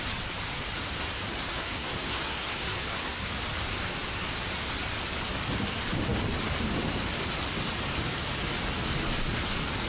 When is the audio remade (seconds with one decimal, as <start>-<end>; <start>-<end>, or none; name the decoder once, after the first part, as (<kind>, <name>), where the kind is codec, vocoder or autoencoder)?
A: 1.5-3.3 (codec, SNAC)